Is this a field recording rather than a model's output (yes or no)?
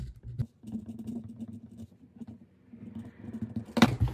yes